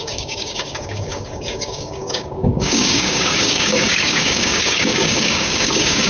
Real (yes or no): no